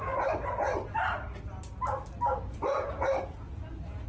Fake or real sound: real